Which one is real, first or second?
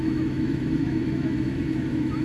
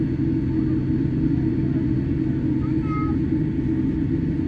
second